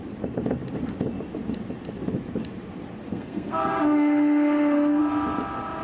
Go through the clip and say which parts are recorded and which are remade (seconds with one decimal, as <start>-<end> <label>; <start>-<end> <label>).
0.0-3.1 recorded; 3.1-5.0 remade; 5.0-5.8 recorded